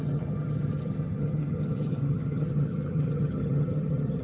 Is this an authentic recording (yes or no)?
no